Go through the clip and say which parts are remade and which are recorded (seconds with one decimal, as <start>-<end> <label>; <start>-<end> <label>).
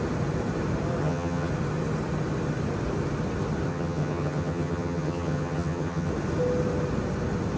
0.0-1.0 recorded; 1.0-1.5 remade; 1.5-3.7 recorded; 3.7-6.1 remade; 6.1-7.6 recorded